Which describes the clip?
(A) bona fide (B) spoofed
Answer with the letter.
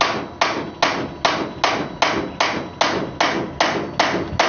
A